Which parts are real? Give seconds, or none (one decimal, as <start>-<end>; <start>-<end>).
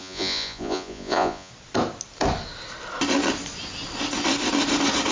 1.5-5.1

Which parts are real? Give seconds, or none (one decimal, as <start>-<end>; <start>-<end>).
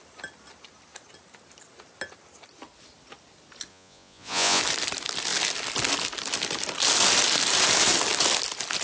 0.0-3.7; 4.6-8.8